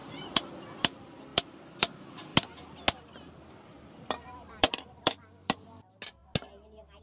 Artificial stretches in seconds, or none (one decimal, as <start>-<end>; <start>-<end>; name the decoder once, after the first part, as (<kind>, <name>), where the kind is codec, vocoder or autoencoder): 0.0-2.3 (vocoder, BigVGAN v2); 3.5-6.2

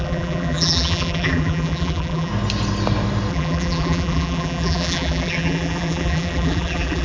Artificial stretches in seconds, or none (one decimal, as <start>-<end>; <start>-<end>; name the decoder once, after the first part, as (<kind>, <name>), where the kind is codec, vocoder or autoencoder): 0.0-2.3 (vocoder, BigVGAN v2); 3.3-7.0

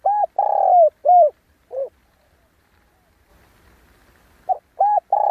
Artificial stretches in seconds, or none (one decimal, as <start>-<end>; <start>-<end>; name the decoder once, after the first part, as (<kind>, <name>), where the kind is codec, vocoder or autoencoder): 1.0-2.3 (vocoder, BigVGAN v2)

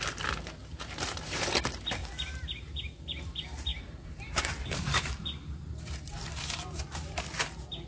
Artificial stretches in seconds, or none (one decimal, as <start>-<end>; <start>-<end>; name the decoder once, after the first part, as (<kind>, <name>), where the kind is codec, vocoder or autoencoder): 0.6-1.4 (vocoder, BigVGAN v2); 2.0-3.3; 3.7-7.2

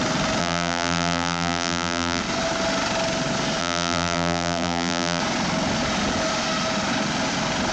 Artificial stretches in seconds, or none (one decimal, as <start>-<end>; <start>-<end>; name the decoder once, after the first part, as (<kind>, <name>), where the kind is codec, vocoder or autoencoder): 0.4-2.2 (vocoder, BigVGAN v2); 3.6-5.2

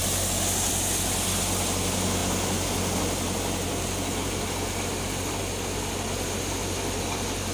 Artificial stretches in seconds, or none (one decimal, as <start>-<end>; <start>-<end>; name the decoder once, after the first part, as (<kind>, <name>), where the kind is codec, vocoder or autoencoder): none

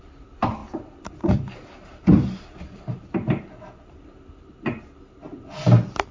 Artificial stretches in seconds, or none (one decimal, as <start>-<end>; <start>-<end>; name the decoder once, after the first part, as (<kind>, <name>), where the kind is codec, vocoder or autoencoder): 0.6-4.3 (vocoder, BigVGAN v2)

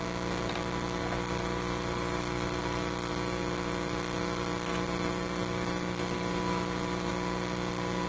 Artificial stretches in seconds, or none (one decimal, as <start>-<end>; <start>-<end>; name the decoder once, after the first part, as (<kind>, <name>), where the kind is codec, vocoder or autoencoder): 1.0-3.1 (vocoder, BigVGAN v2); 4.7-7.1